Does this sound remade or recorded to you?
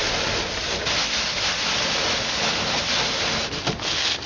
recorded